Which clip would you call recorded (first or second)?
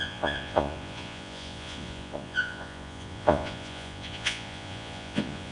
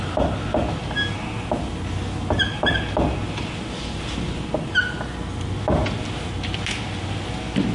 second